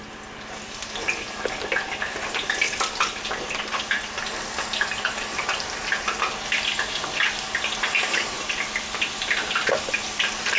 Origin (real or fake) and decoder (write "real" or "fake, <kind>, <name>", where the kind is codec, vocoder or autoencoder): real